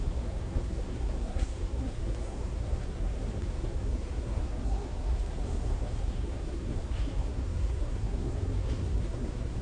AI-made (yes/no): yes